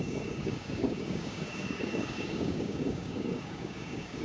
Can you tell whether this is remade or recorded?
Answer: remade